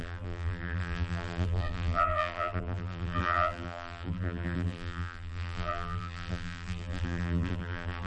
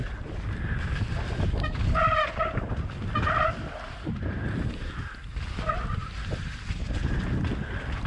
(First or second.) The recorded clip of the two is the second